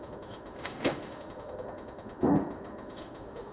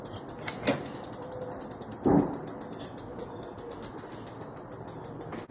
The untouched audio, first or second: second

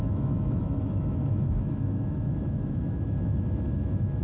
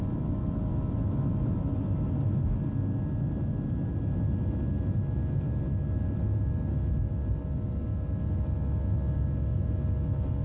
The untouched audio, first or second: second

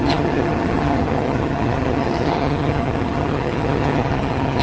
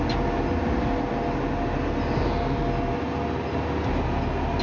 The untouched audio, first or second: second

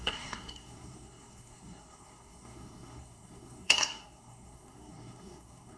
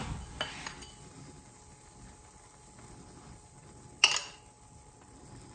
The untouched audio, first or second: second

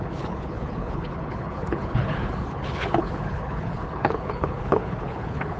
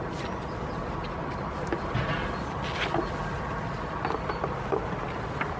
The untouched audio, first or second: second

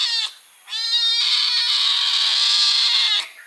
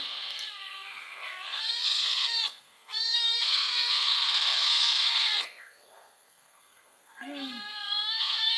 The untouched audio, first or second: first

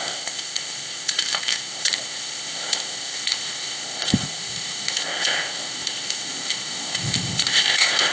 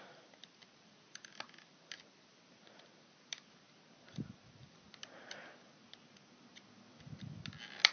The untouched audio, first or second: second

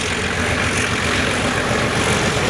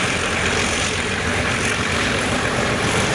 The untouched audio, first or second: first